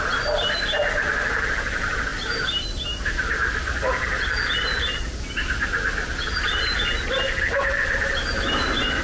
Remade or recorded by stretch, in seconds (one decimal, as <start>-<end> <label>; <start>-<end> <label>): 0.0-9.0 recorded